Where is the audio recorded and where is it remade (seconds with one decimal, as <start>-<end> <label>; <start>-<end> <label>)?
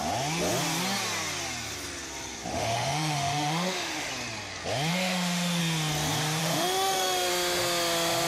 0.0-2.5 recorded; 2.5-4.1 remade; 4.1-4.9 recorded; 4.9-5.6 remade; 5.6-6.4 recorded; 6.4-7.3 remade; 7.3-8.3 recorded